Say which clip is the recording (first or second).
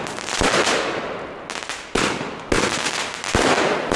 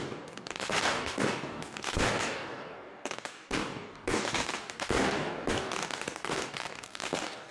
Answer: first